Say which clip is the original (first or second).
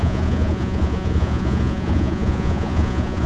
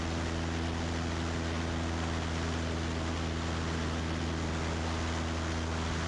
second